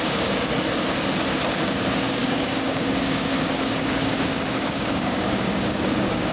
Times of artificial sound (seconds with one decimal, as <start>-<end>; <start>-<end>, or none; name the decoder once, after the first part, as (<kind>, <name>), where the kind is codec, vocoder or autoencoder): 0.0-0.5 (codec, DAC); 1.5-6.3